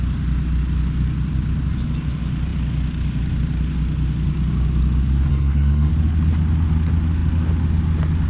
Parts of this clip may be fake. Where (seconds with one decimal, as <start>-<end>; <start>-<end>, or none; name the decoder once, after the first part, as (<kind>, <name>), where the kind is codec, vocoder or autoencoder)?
5.3-5.9 (codec, SNAC)